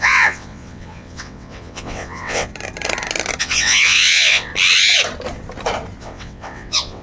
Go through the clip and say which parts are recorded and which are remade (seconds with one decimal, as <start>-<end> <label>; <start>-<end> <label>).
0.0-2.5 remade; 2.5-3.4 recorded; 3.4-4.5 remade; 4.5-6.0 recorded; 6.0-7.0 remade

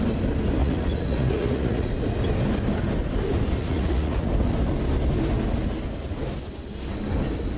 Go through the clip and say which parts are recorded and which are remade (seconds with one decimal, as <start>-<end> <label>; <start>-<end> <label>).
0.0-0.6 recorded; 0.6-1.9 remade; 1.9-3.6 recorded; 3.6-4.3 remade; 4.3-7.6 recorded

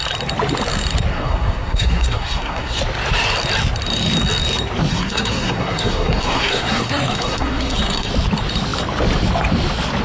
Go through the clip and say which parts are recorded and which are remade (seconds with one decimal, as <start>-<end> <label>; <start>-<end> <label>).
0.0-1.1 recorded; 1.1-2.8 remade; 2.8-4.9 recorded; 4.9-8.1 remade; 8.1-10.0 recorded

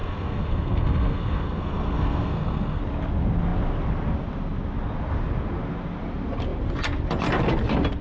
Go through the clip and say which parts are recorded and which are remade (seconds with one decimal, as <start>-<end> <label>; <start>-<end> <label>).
0.0-2.8 remade; 2.8-8.0 recorded

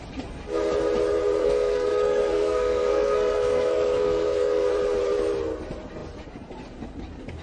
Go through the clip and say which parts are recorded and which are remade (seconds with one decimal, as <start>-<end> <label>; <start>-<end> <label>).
0.0-1.4 recorded; 1.4-4.7 remade; 4.7-7.4 recorded